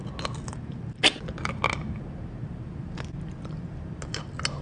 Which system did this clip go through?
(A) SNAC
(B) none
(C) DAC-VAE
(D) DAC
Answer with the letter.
B